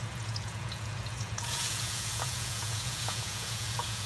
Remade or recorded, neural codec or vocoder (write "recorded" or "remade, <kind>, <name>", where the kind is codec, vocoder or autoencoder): remade, vocoder, Vocos